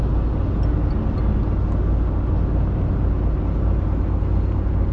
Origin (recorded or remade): recorded